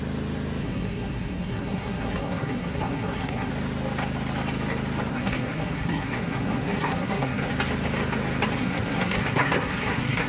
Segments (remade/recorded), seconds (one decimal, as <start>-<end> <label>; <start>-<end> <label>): 0.0-0.6 recorded; 0.6-3.5 remade; 3.5-5.1 recorded; 5.1-7.5 remade; 7.5-8.6 recorded; 8.6-10.3 remade